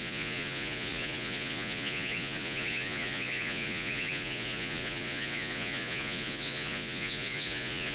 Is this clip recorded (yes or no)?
no